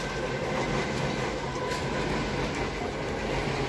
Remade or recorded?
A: recorded